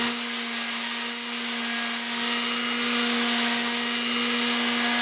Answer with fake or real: real